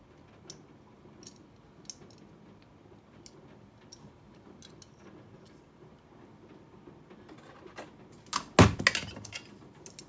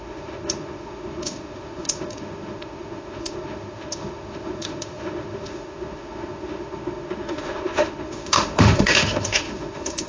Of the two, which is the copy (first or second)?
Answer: second